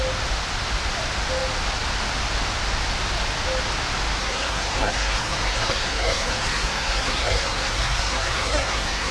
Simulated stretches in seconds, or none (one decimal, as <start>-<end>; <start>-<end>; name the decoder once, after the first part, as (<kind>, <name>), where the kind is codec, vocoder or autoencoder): 4.2-9.1 (codec, SNAC)